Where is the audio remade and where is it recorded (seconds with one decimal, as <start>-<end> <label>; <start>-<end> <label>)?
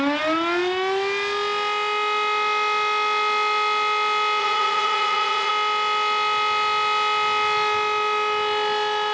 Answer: 0.0-4.4 recorded; 4.4-5.5 remade; 5.5-9.1 recorded